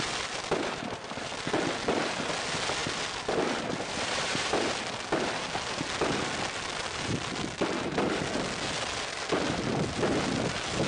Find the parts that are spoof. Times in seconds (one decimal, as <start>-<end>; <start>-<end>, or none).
2.8-4.5